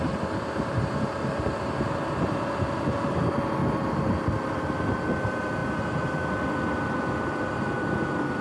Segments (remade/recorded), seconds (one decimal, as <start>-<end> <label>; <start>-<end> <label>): 0.0-8.4 recorded